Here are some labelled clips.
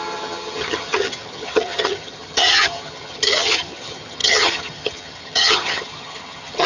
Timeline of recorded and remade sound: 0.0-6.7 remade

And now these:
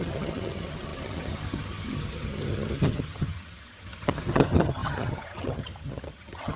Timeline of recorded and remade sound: 0.0-6.6 remade

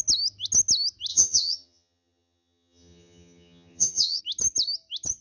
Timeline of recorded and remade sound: 0.0-1.1 recorded; 1.1-4.2 remade; 4.2-5.2 recorded

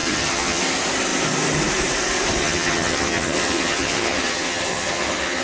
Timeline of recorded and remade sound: 0.0-0.6 remade; 0.6-2.4 recorded; 2.4-5.4 remade

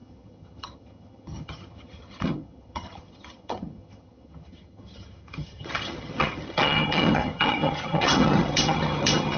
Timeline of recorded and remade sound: 0.0-9.4 remade

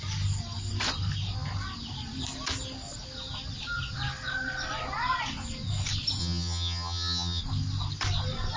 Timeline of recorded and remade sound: 0.0-6.2 recorded; 6.2-7.4 remade; 7.4-8.6 recorded

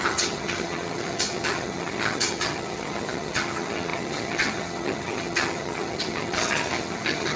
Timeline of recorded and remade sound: 0.0-7.4 remade

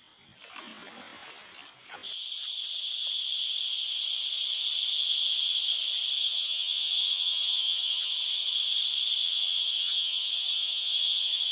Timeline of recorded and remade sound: 0.0-6.2 recorded; 6.2-8.1 remade; 8.1-9.2 recorded; 9.2-11.5 remade